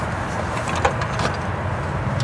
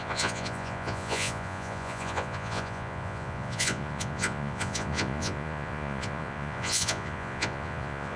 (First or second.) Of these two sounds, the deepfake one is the second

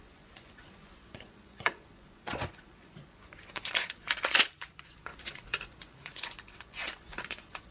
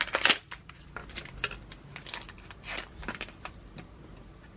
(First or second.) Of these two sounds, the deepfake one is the first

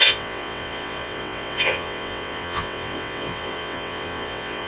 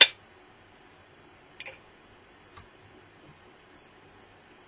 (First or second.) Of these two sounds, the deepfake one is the first